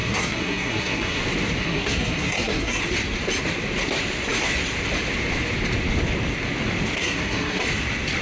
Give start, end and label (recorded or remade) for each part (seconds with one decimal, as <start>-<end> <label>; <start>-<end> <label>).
0.0-1.2 remade; 1.2-1.6 recorded; 1.6-2.8 remade; 2.8-7.0 recorded; 7.0-7.6 remade; 7.6-8.2 recorded